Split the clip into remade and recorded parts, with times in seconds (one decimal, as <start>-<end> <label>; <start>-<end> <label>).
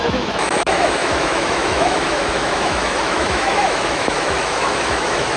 0.0-5.4 remade